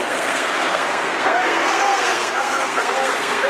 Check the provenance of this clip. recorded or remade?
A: remade